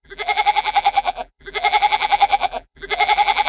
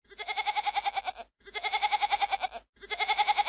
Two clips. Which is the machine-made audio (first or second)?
first